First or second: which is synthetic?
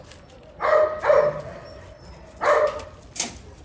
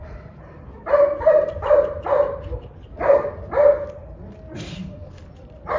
second